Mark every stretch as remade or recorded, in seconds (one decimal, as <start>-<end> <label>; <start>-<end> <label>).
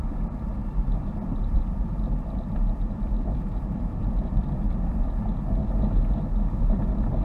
0.0-5.6 remade; 5.6-6.6 recorded; 6.6-7.2 remade